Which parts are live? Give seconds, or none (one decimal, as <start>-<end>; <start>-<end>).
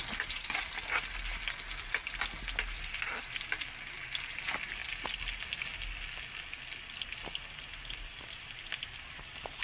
0.0-9.6